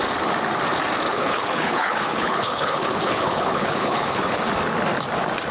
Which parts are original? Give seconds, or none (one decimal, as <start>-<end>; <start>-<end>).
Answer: 0.0-1.1; 4.4-5.5